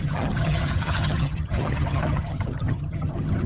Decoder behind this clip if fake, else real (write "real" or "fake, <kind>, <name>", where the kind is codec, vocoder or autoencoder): fake, vocoder, HiFi-GAN